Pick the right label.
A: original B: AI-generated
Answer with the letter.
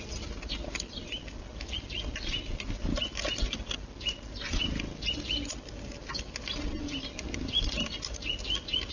A